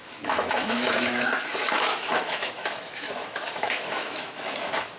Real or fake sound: fake